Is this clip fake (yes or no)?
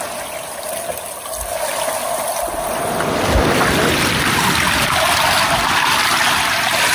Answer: no